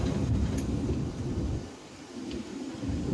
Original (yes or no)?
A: yes